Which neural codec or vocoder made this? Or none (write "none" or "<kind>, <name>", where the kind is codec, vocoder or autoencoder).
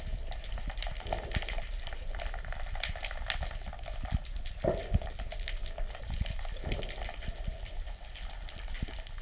none